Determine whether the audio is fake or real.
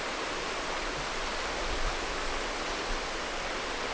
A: real